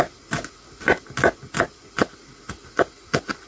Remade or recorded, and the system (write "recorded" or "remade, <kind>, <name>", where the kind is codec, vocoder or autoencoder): recorded